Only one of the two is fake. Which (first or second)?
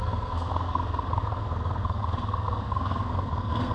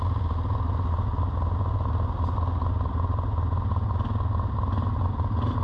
first